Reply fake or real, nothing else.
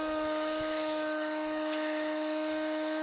fake